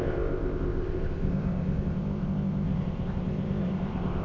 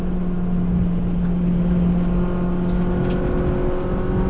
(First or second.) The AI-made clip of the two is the first